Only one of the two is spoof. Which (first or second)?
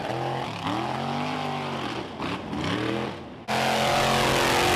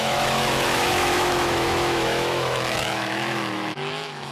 second